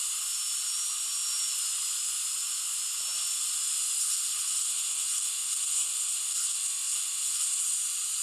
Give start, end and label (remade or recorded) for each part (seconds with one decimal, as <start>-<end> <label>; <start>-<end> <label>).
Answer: 0.0-4.0 recorded; 4.0-7.6 remade; 7.6-8.2 recorded